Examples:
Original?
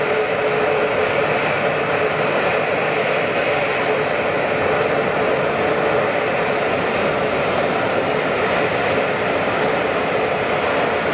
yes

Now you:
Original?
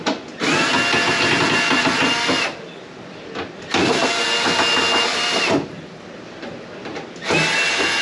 yes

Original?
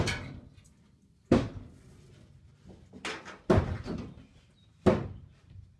yes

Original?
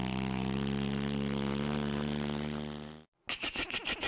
yes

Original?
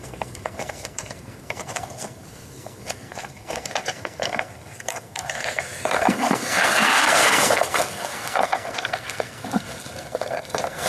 no